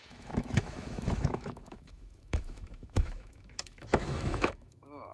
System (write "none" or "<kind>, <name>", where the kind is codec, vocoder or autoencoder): autoencoder, DAC-VAE